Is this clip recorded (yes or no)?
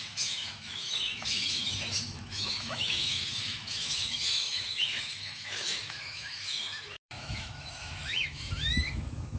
no